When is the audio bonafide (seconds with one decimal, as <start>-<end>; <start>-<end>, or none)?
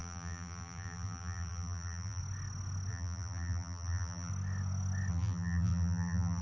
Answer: 2.2-2.9; 4.3-5.1